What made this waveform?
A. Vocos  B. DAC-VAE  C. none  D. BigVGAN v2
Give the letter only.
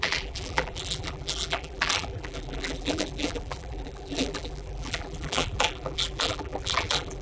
D